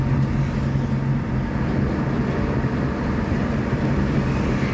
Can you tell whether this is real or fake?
real